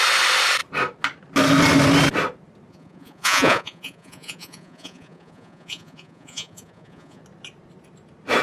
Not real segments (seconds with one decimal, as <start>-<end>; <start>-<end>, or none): 2.7-7.2